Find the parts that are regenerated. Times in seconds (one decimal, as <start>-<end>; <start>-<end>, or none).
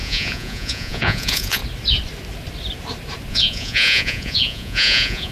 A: 0.0-1.6; 3.3-5.3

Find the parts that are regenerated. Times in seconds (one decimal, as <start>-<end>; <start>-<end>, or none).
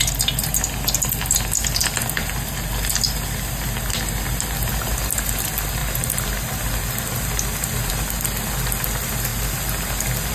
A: none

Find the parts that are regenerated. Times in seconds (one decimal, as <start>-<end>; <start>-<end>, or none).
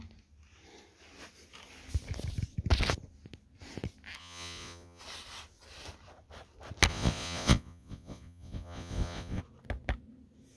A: 4.2-5.0; 6.9-9.4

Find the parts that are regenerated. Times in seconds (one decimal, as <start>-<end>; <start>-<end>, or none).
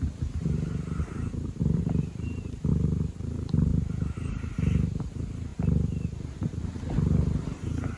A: 1.6-2.7; 3.7-5.0; 5.5-6.4